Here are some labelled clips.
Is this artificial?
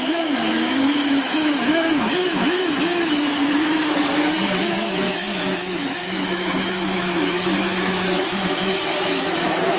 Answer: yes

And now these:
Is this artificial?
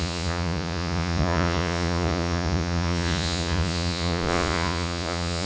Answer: yes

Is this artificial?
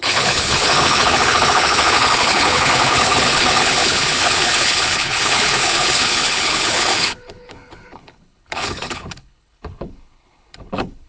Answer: yes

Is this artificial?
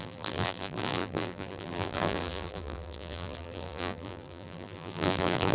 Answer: yes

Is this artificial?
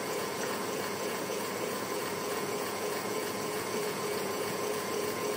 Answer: yes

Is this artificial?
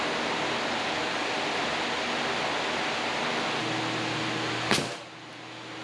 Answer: no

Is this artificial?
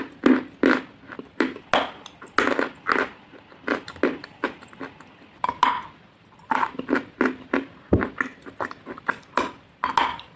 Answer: no